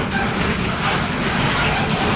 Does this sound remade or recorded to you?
recorded